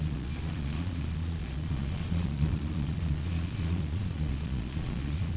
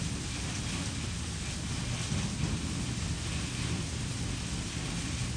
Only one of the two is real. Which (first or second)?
second